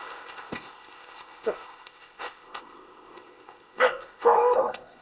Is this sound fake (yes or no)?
yes